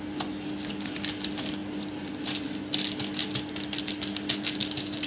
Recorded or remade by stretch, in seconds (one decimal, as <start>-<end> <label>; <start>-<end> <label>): 0.0-5.1 recorded